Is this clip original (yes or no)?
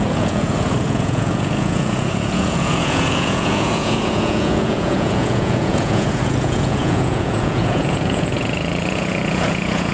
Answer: no